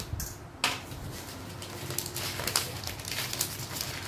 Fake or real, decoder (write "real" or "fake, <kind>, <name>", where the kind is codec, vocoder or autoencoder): real